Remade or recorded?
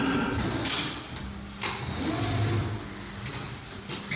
remade